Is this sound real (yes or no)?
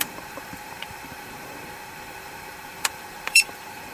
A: no